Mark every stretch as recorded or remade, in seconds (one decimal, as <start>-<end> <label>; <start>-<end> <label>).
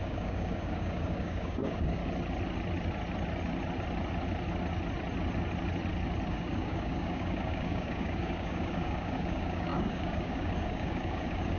0.0-2.0 remade; 2.0-6.3 recorded; 6.3-11.6 remade